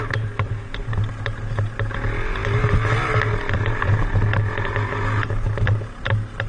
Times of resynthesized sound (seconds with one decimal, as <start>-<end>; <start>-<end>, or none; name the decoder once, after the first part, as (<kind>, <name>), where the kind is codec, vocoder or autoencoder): none